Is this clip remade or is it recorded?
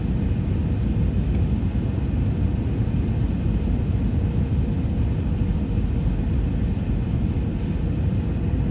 recorded